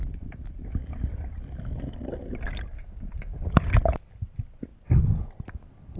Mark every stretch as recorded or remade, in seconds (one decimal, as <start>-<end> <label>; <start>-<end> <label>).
0.0-6.0 recorded